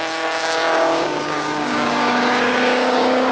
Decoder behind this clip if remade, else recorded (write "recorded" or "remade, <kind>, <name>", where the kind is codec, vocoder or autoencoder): remade, codec, DAC